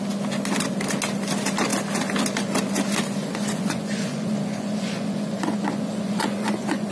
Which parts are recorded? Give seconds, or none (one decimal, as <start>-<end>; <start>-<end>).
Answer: 0.0-3.2